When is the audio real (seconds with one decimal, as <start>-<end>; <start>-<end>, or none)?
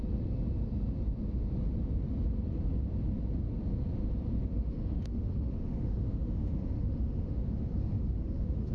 0.0-4.4